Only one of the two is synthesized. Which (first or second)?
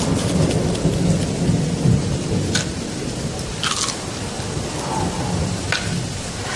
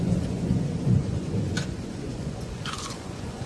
second